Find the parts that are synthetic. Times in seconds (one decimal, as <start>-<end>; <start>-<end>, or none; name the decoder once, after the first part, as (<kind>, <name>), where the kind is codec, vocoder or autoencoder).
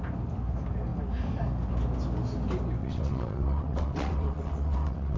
2.8-5.2 (vocoder, WaveNeXt)